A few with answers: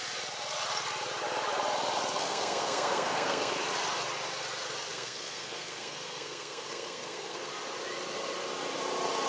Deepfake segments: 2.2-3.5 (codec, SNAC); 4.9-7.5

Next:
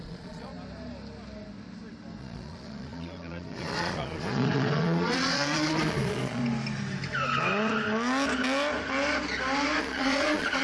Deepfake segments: 0.0-0.5 (vocoder, Vocos); 2.2-6.4; 9.8-10.6

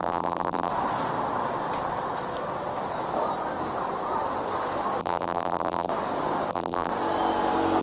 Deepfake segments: 0.0-0.7 (vocoder, BigVGAN v2); 5.0-5.9; 6.5-6.9

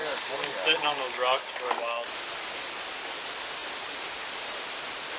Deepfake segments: none

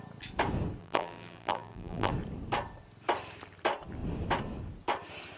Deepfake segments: 0.8-2.1 (vocoder, BigVGAN v2)

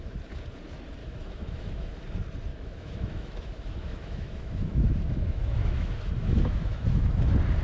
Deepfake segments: 1.0-1.9 (autoencoder, DAC-VAE); 2.5-7.1